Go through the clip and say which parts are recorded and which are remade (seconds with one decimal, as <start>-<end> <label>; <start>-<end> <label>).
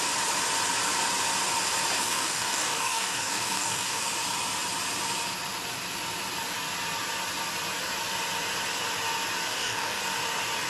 0.0-2.0 recorded; 2.0-4.1 remade; 4.1-9.5 recorded; 9.5-10.0 remade; 10.0-10.7 recorded